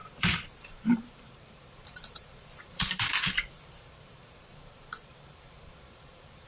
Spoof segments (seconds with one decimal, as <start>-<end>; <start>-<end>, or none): 0.0-6.5